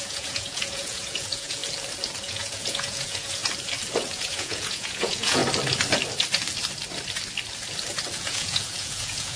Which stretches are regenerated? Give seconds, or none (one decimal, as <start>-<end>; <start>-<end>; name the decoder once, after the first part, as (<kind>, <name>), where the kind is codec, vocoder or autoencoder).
0.0-1.6 (vocoder, Vocos); 2.2-3.4; 4.0-5.4; 8.1-9.4